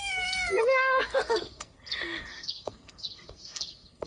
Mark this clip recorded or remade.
remade